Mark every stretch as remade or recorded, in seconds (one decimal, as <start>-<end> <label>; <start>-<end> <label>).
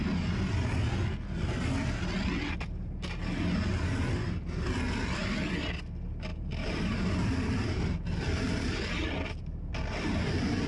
0.0-6.3 recorded; 6.3-10.2 remade; 10.2-10.7 recorded